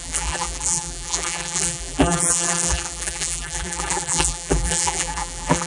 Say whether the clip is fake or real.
fake